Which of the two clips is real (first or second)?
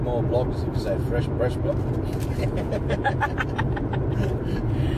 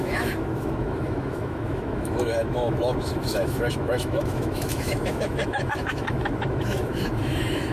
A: first